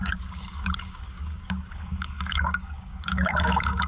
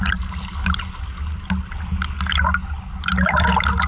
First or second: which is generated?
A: first